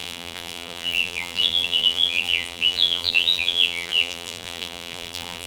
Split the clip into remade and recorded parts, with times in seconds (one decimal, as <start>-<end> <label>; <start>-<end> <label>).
0.0-5.5 remade